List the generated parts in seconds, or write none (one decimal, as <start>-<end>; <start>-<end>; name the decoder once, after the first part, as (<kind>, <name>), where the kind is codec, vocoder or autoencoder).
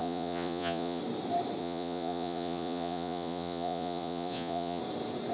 0.0-1.0 (vocoder, Vocos); 1.6-4.8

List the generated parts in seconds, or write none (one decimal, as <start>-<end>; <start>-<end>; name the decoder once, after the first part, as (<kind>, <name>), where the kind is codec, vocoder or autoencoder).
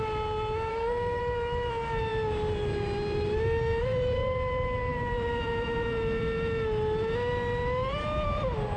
0.7-1.2 (codec, SNAC)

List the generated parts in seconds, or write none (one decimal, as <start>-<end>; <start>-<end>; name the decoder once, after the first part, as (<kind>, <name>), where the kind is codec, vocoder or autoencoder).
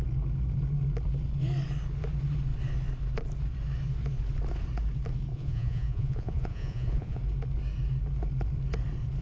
5.3-7.2 (vocoder, Vocos)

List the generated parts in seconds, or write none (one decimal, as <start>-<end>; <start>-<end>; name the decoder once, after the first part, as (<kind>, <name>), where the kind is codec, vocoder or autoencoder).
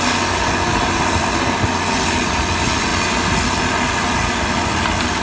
none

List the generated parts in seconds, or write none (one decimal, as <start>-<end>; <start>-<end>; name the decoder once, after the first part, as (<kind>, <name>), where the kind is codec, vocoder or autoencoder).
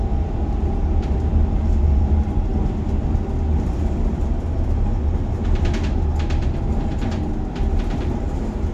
none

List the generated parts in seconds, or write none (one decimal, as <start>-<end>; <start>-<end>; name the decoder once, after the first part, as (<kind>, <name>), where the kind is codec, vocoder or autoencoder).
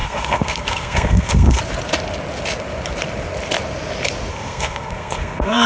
0.0-1.6 (codec, SNAC); 4.3-5.7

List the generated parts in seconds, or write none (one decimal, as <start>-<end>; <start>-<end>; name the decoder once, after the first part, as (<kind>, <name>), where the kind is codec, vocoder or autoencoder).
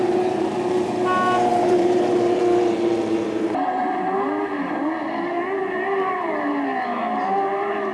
1.5-2.4 (vocoder, BigVGAN v2); 3.8-4.8; 5.6-6.3